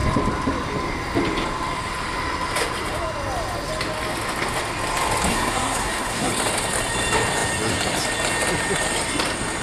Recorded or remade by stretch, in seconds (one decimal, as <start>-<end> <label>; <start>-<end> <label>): 0.0-5.3 recorded; 5.3-6.3 remade; 6.3-9.6 recorded